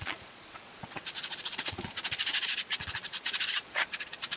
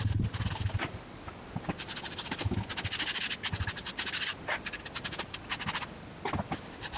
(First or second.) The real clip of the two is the second